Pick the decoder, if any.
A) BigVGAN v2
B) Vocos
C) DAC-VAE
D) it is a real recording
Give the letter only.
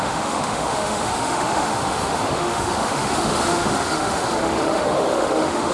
C